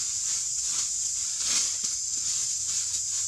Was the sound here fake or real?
real